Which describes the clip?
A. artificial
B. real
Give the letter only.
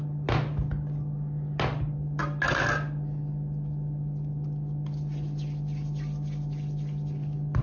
B